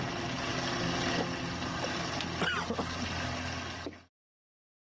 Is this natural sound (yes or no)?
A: yes